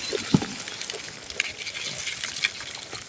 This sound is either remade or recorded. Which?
recorded